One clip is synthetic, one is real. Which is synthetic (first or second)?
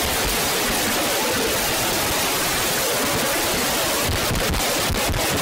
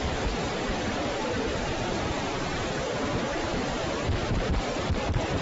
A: second